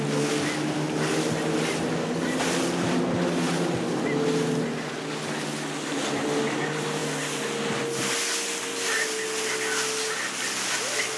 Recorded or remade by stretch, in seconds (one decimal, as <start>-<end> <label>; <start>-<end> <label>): 0.0-11.2 recorded